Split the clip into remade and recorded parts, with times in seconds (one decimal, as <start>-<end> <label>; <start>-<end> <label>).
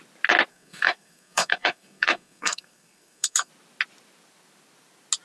0.0-0.5 recorded; 0.5-3.5 remade; 3.5-5.2 recorded